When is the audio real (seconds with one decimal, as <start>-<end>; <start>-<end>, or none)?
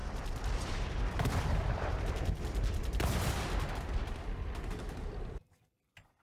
3.7-6.2